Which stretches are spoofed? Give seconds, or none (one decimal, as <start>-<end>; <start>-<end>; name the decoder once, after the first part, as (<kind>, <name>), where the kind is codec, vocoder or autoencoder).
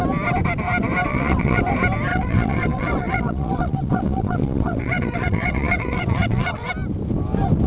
1.1-1.6 (vocoder, WaveNeXt); 2.1-6.7